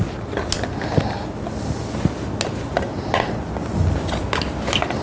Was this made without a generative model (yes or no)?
yes